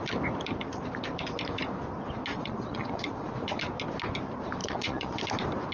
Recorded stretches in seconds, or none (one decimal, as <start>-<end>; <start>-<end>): 0.0-2.3; 3.6-4.6; 5.2-5.7